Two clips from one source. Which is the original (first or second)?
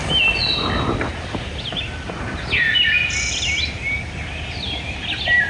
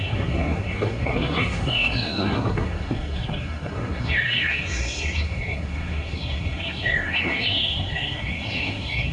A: first